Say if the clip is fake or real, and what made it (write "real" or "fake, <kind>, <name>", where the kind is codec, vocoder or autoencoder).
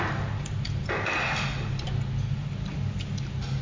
real